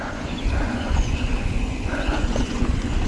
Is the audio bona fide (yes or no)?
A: no